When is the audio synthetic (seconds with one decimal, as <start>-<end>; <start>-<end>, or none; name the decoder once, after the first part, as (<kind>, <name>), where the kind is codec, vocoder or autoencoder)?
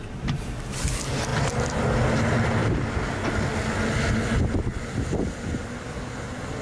none